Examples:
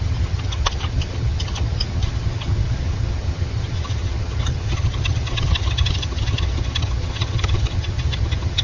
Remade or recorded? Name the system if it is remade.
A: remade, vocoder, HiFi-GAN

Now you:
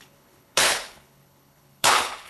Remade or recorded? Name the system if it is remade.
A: remade, codec, HILCodec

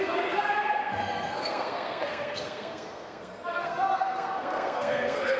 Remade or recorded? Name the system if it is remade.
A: remade, codec, SNAC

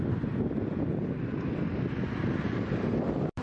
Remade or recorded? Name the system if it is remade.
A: recorded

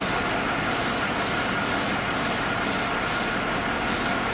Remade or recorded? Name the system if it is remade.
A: recorded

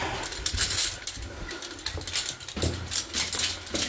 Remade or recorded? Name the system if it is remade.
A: recorded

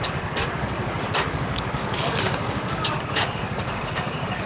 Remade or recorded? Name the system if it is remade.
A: remade, codec, DAC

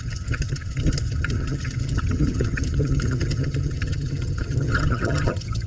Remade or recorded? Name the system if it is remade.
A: remade, vocoder, HiFi-GAN